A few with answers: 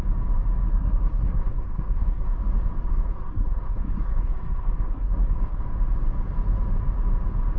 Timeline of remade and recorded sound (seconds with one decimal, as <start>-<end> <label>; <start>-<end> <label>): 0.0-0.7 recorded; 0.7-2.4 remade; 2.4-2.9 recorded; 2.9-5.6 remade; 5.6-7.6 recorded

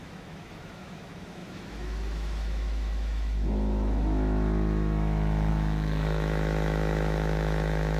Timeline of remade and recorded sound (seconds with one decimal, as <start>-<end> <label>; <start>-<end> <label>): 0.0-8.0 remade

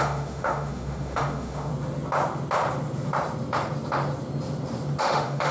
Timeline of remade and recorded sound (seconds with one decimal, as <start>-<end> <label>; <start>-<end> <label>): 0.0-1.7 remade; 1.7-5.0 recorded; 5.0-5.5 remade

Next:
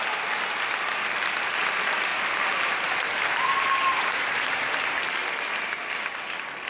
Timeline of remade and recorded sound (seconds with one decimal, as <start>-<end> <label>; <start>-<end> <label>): 0.0-2.1 recorded; 2.1-5.1 remade; 5.1-6.7 recorded